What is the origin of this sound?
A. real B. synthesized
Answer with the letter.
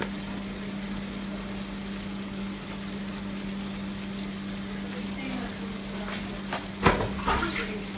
A